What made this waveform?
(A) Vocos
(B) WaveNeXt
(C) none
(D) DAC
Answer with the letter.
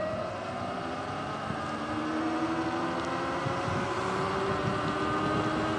C